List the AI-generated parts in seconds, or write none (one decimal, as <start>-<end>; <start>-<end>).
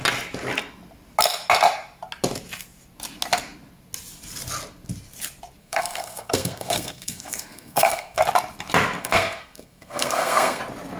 5.6-8.2; 9.0-10.6